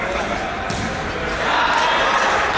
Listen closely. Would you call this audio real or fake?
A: real